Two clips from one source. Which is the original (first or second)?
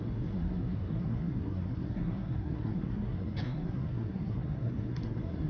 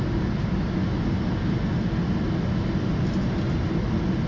second